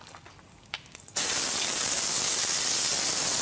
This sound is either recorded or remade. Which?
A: recorded